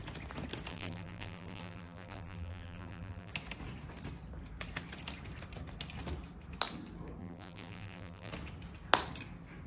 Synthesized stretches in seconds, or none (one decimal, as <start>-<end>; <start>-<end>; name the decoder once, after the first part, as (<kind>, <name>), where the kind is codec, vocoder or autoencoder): 0.7-3.3 (vocoder, BigVGAN v2); 7.2-8.3